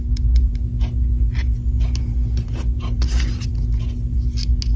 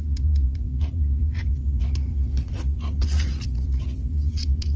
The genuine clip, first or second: first